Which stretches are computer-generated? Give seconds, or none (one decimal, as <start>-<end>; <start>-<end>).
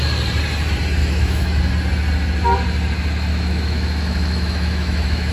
1.0-1.6; 3.3-5.3